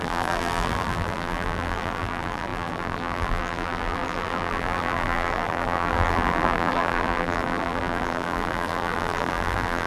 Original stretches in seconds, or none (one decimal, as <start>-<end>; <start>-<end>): none